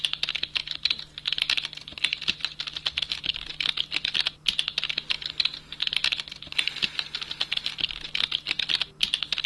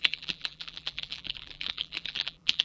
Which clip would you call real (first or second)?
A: first